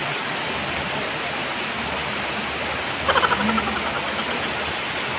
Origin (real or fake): real